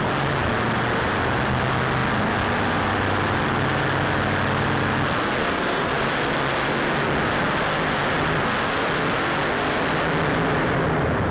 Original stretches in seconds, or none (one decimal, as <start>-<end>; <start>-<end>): 0.0-5.4; 5.9-11.3